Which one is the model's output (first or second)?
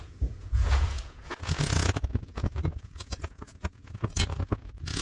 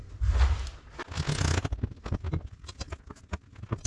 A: first